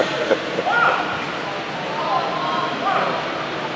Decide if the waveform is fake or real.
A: real